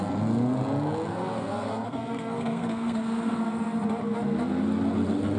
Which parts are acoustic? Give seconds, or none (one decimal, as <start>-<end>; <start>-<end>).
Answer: 0.0-1.1; 3.4-5.4